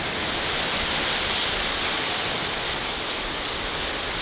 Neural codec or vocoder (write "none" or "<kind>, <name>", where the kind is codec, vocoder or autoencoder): none